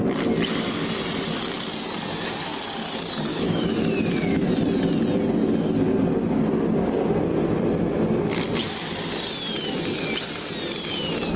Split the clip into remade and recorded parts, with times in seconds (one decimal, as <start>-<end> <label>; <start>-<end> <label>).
0.0-3.3 recorded; 3.3-4.5 remade; 4.5-11.4 recorded